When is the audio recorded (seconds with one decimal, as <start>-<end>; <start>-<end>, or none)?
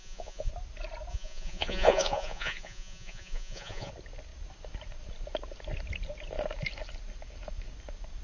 0.5-1.1; 3.9-8.2